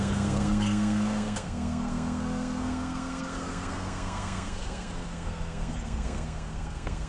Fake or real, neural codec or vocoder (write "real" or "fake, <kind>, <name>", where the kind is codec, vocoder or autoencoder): fake, codec, SNAC